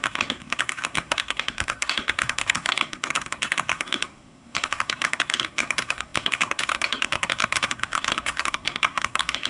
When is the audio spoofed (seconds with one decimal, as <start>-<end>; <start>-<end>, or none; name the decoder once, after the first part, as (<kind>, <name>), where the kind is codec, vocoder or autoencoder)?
0.0-9.5 (codec, SNAC)